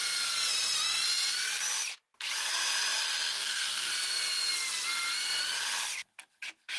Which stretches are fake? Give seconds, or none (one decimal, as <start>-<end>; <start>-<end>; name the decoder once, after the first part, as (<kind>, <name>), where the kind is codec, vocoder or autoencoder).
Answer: 3.3-3.9 (codec, DAC)